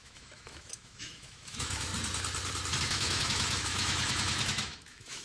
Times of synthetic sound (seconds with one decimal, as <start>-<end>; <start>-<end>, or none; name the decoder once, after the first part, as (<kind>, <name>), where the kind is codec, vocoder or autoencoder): 0.0-1.9 (autoencoder, DAC-VAE); 2.8-5.2